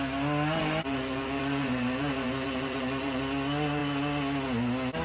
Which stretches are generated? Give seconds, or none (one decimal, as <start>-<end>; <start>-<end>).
0.6-3.2